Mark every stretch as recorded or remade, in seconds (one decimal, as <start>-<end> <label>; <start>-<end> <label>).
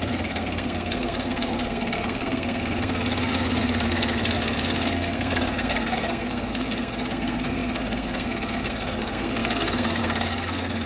0.0-10.9 remade